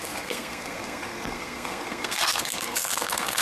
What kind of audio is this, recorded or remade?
remade